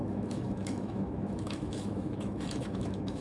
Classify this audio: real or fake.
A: fake